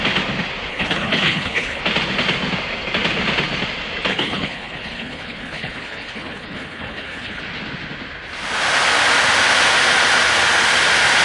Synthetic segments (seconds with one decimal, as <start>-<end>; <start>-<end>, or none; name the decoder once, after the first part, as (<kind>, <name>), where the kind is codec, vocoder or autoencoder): 0.7-1.8 (codec, HILCodec); 4.1-7.4